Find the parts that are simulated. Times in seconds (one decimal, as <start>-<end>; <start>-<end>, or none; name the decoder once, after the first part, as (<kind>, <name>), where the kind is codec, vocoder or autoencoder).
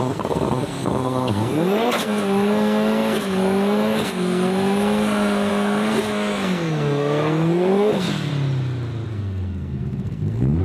0.0-8.3 (codec, SNAC); 9.1-10.6